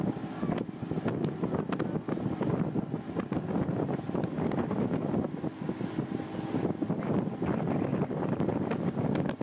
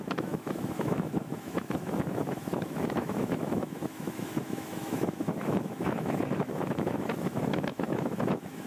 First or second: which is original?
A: first